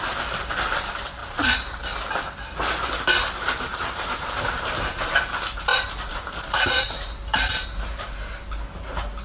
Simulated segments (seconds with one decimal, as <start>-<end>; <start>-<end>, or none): 3.7-4.7; 5.7-8.2